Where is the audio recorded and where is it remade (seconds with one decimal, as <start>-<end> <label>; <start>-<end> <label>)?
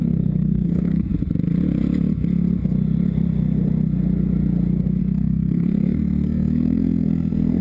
0.0-1.1 remade; 1.1-5.0 recorded; 5.0-7.6 remade